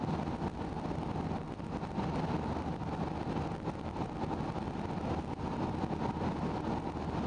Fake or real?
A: real